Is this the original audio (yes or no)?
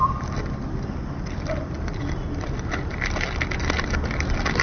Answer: no